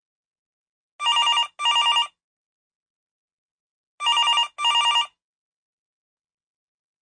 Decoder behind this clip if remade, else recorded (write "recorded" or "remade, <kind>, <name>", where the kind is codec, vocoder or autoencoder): recorded